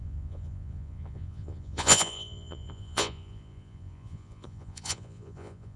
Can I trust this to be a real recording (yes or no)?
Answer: no